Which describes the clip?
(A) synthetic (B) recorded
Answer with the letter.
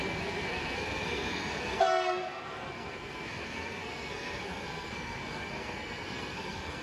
A